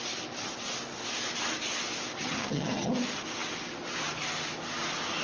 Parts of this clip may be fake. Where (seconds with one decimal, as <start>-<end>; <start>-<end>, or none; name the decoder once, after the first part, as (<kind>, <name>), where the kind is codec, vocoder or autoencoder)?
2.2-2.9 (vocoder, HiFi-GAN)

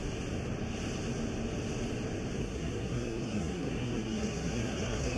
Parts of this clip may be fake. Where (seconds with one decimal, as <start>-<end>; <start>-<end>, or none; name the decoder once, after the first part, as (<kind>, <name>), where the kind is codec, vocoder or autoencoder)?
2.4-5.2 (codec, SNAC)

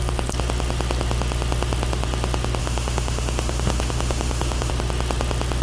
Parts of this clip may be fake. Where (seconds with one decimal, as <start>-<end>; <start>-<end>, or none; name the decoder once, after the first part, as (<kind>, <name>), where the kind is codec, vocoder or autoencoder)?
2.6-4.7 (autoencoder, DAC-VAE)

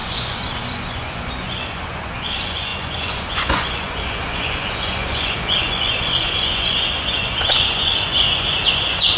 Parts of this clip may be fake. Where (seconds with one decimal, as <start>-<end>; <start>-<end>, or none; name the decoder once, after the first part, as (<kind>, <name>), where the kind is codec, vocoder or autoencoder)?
0.0-9.2 (vocoder, Vocos)

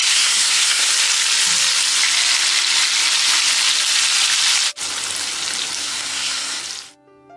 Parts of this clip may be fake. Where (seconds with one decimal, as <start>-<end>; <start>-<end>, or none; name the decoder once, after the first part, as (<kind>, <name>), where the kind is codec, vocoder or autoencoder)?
0.0-0.9 (codec, SNAC); 5.8-6.6